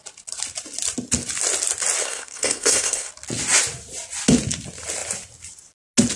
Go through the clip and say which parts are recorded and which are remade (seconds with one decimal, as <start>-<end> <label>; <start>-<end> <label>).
0.0-2.0 recorded; 2.0-3.1 remade; 3.1-6.2 recorded